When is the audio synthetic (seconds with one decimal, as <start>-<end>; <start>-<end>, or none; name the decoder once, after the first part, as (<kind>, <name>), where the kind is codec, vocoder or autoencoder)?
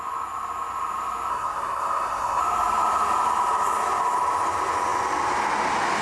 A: 1.3-2.4 (codec, SNAC)